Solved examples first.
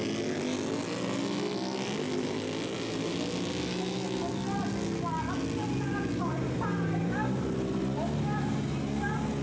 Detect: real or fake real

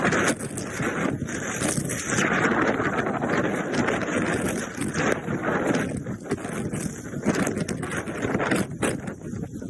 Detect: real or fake real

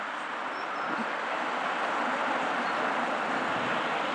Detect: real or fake real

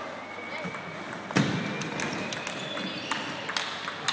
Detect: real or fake real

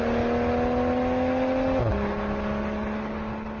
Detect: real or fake real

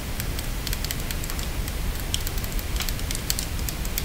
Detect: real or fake real